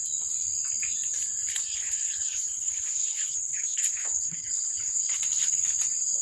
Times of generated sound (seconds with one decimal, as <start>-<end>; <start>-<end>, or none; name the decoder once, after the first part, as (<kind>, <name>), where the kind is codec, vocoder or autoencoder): 1.5-5.2 (codec, HILCodec)